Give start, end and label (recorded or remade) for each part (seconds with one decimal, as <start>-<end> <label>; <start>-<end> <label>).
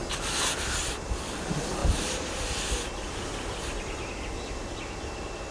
0.0-1.4 remade; 1.4-1.8 recorded; 1.8-4.1 remade; 4.1-5.5 recorded